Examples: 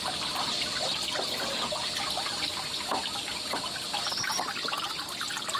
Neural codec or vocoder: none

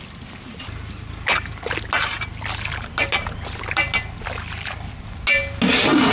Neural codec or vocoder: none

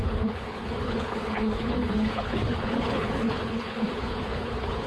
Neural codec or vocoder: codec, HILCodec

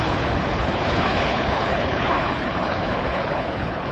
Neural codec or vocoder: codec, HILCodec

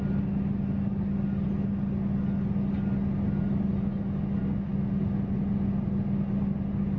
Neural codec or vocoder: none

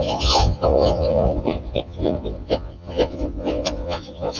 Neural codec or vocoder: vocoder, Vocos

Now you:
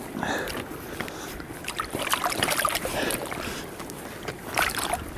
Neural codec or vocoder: none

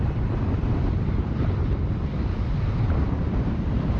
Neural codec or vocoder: vocoder, BigVGAN v2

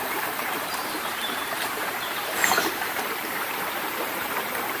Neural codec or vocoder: vocoder, BigVGAN v2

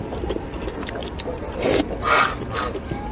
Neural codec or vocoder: none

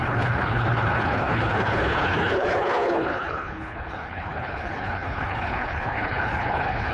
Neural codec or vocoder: codec, HILCodec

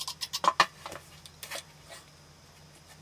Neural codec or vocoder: none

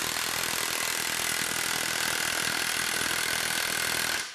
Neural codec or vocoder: none